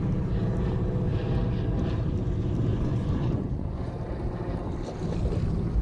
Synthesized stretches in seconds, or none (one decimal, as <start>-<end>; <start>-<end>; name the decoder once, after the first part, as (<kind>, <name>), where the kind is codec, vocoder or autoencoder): 2.7-3.9 (vocoder, Vocos)